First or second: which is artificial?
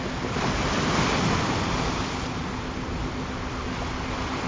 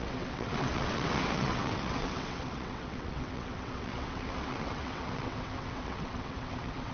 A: second